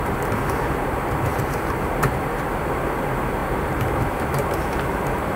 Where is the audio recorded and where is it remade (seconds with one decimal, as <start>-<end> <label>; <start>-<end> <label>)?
0.0-5.4 remade